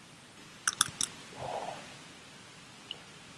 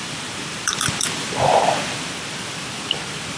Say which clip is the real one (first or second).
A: first